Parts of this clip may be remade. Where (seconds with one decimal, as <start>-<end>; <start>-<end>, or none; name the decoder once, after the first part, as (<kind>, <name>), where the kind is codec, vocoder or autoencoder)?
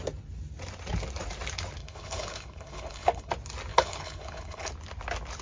1.8-3.3 (codec, HILCodec); 3.7-4.7